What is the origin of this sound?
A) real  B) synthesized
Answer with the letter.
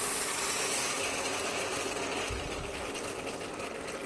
A